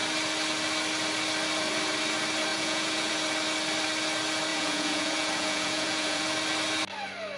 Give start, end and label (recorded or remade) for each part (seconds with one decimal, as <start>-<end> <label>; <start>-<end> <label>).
0.0-2.5 recorded; 2.5-3.1 remade; 3.1-4.5 recorded; 4.5-6.2 remade; 6.2-7.4 recorded